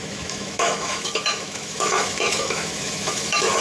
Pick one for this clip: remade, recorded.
remade